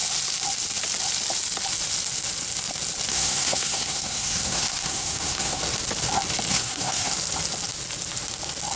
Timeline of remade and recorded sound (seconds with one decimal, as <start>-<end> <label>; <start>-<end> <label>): 0.0-3.1 recorded; 3.1-5.6 remade; 5.6-6.5 recorded; 6.5-7.1 remade; 7.1-8.8 recorded